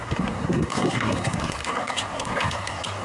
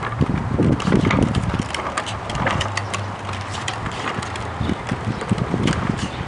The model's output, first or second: first